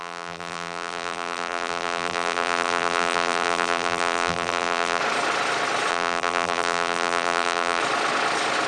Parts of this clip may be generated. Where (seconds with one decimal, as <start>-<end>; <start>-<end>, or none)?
0.0-5.0; 5.9-7.8